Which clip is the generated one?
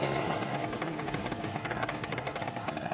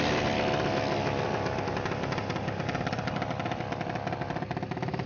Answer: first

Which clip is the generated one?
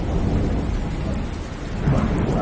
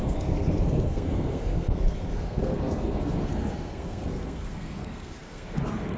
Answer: second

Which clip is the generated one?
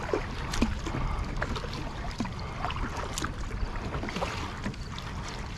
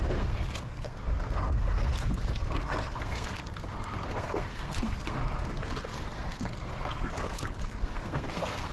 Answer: second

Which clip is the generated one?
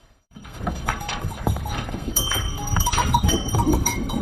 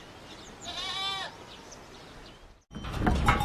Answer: first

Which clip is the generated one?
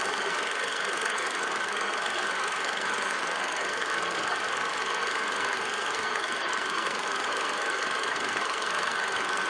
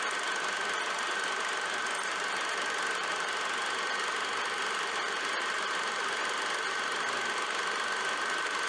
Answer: first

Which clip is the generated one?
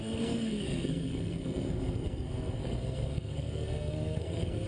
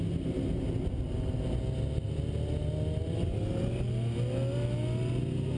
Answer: first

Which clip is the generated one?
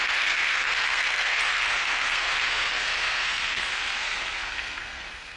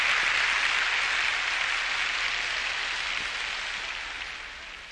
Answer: first